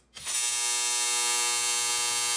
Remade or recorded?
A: recorded